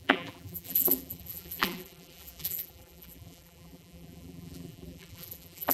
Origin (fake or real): fake